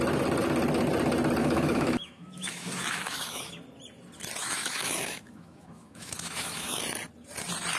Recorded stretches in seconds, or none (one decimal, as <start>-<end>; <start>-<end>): 0.0-1.4; 3.6-4.4; 6.8-7.8